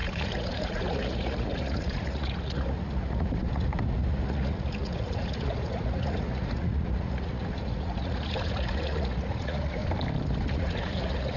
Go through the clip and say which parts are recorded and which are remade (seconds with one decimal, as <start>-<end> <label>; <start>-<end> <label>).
0.0-9.8 remade; 9.8-10.5 recorded; 10.5-11.4 remade